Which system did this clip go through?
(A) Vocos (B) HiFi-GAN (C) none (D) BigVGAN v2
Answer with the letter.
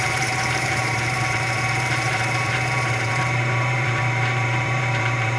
D